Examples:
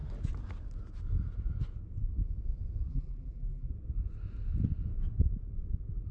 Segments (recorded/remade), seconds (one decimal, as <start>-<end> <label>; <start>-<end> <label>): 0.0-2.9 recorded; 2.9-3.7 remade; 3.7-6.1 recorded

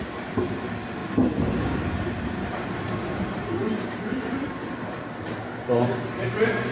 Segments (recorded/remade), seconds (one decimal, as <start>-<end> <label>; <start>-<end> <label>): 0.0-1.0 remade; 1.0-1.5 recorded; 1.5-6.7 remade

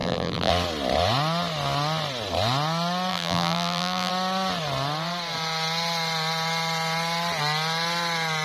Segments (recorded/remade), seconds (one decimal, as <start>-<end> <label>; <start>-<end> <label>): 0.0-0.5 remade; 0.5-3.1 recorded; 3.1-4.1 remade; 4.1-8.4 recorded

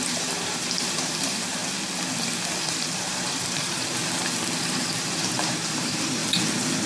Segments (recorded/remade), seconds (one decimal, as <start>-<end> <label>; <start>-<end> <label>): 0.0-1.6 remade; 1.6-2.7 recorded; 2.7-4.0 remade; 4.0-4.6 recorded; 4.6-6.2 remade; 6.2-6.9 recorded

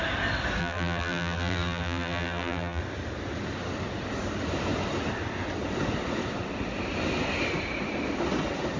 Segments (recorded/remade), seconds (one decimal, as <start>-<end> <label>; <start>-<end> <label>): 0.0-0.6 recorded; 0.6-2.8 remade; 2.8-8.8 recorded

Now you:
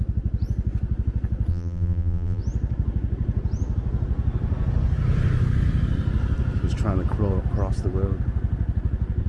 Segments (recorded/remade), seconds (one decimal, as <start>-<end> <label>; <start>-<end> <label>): 0.0-1.5 recorded; 1.5-2.4 remade; 2.4-9.3 recorded